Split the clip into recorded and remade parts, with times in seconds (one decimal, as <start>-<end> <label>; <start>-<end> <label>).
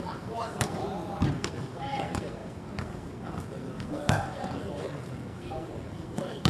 0.0-0.8 remade; 0.8-1.3 recorded; 1.3-6.5 remade